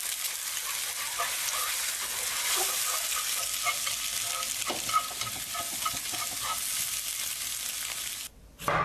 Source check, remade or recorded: recorded